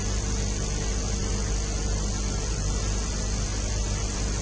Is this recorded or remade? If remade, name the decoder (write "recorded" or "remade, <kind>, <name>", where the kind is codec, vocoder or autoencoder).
recorded